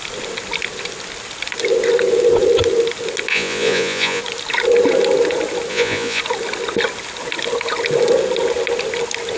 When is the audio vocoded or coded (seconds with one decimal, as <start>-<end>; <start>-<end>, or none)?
3.3-4.2; 5.7-6.2